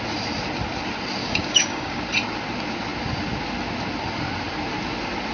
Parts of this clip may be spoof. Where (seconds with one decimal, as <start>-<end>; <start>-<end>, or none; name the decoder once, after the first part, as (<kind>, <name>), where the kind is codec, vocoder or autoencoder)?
1.2-2.0 (codec, DAC)